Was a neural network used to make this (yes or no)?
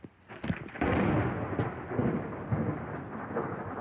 no